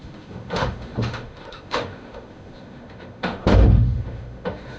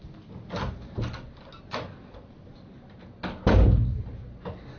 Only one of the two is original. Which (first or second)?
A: second